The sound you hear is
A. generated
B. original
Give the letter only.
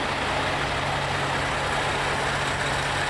B